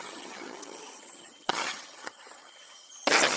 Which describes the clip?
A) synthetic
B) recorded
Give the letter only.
A